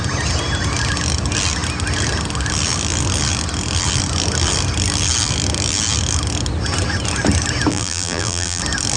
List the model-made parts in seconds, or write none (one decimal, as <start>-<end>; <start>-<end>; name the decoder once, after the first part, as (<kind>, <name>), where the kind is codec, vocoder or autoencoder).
7.7-8.6 (vocoder, BigVGAN v2)